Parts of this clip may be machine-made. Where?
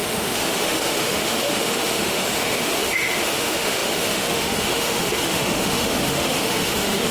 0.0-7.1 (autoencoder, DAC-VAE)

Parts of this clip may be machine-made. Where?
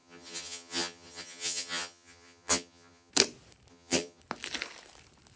0.0-3.1 (vocoder, HiFi-GAN); 3.7-4.2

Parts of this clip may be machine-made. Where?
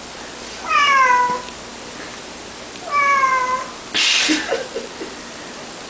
none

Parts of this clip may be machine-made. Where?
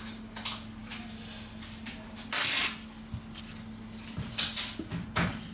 none